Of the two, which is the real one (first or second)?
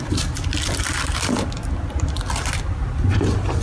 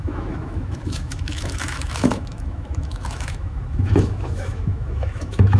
first